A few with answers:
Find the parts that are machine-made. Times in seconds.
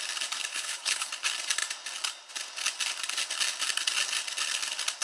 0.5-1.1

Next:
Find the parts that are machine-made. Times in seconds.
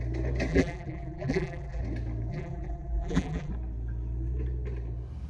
0.5-1.8; 2.3-3.5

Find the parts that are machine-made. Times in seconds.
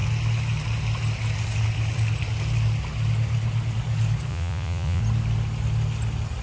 4.3-5.0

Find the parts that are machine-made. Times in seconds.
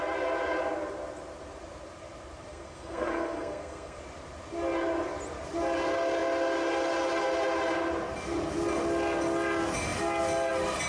2.5-4.0